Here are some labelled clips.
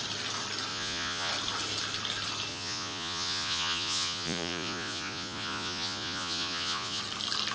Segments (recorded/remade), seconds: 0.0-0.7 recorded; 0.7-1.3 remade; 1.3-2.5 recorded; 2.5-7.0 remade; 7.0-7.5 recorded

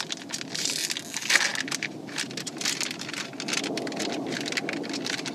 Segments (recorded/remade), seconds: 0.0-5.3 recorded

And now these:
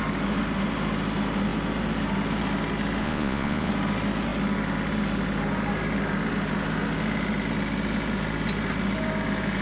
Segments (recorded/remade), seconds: 0.0-3.0 recorded; 3.0-3.7 remade; 3.7-9.6 recorded

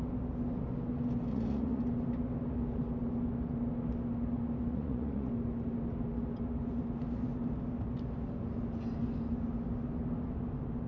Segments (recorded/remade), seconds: 0.0-1.3 recorded; 1.3-1.8 remade; 1.8-4.7 recorded; 4.7-5.3 remade; 5.3-10.9 recorded

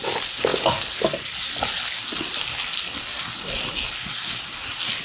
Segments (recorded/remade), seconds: 0.0-5.0 recorded

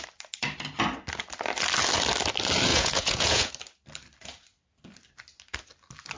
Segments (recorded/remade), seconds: 0.0-2.7 recorded; 2.7-3.5 remade; 3.5-6.2 recorded

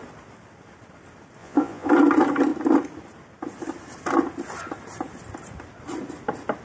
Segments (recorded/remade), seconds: 0.0-1.4 recorded; 1.4-1.9 remade; 1.9-6.6 recorded

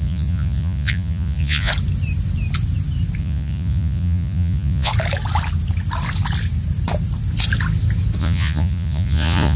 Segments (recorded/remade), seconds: 0.0-1.7 remade; 1.7-3.2 recorded; 3.2-4.9 remade; 4.9-8.2 recorded; 8.2-9.6 remade